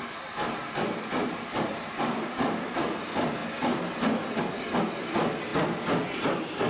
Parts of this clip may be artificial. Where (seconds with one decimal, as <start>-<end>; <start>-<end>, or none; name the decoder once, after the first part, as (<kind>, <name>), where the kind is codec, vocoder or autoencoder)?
1.2-3.0 (vocoder, BigVGAN v2)